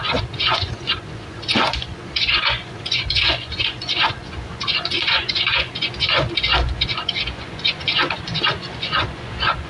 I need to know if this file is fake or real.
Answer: fake